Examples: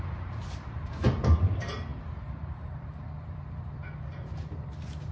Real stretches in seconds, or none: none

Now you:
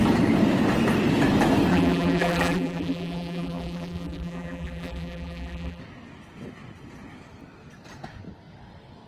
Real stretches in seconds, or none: 0.0-1.7; 5.8-9.1

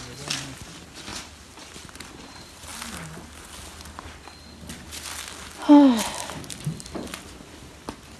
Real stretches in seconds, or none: 0.0-1.1; 1.6-8.2

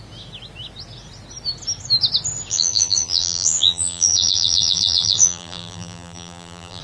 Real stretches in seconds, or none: 0.0-2.5

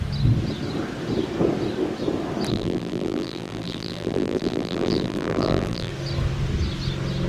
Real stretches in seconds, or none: 0.0-2.5; 5.9-7.3